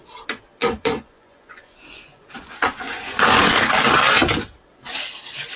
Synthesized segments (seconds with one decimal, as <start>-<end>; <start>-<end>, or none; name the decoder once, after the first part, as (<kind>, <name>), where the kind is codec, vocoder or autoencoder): 0.6-3.6 (vocoder, Vocos)